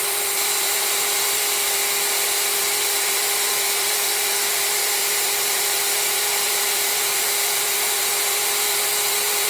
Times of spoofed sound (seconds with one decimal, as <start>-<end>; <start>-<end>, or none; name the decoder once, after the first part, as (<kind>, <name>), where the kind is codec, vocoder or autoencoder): 0.0-1.8 (vocoder, BigVGAN v2); 2.6-9.5